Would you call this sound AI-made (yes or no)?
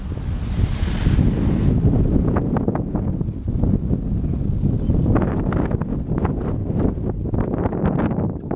no